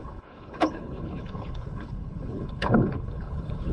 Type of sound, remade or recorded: remade